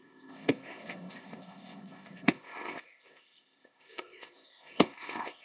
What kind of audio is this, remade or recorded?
remade